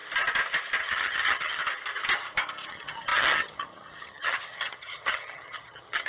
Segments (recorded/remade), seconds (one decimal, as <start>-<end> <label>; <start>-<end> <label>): 0.0-0.8 recorded; 0.8-1.6 remade; 1.6-2.7 recorded; 2.7-6.1 remade